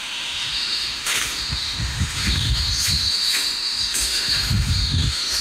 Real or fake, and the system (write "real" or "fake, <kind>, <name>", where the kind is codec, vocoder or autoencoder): fake, autoencoder, DAC-VAE